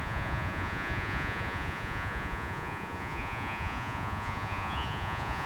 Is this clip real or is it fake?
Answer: fake